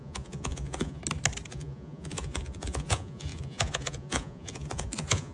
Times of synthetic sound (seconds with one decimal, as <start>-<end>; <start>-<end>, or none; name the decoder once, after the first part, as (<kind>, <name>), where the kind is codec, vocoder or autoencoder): 0.0-1.0 (vocoder, Vocos); 1.5-5.3